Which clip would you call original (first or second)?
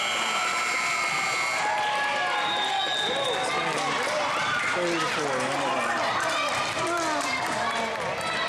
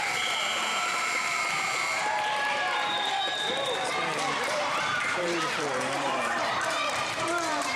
first